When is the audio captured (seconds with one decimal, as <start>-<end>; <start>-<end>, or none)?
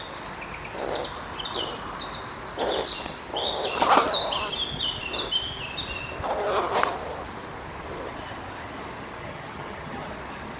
0.0-9.2; 10.1-10.6